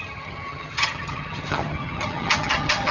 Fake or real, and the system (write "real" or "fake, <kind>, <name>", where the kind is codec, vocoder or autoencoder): fake, vocoder, HiFi-GAN